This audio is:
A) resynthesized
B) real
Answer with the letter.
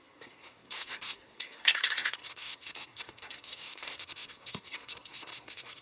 A